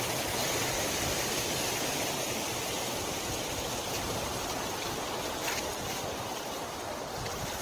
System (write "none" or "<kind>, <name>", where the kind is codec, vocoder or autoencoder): none